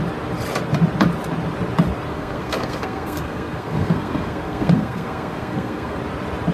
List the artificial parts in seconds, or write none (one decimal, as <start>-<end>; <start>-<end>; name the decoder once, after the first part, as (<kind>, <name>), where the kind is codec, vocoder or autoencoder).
2.1-6.0 (codec, SNAC)